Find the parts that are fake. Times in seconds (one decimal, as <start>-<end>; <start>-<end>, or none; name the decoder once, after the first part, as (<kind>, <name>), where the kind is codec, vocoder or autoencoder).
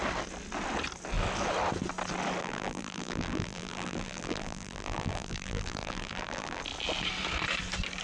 2.4-6.6 (vocoder, BigVGAN v2)